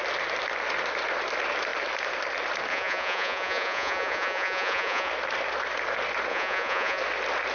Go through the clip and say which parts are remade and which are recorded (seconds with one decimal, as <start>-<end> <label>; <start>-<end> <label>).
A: 0.0-2.7 recorded; 2.7-5.1 remade; 5.1-6.3 recorded; 6.3-7.0 remade; 7.0-7.5 recorded